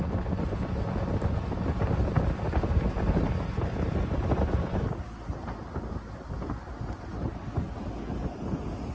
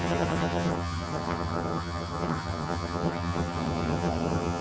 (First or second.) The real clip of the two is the first